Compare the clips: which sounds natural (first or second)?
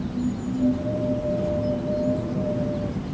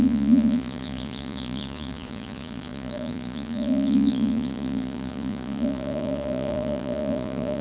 first